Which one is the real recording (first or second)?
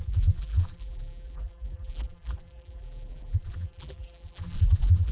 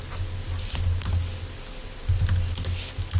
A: second